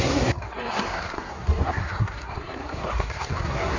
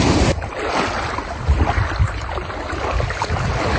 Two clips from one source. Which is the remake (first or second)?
first